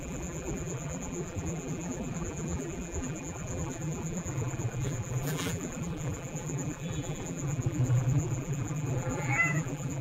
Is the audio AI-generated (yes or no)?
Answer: yes